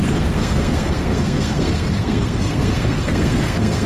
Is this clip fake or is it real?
fake